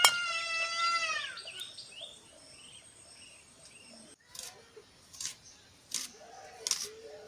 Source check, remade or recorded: recorded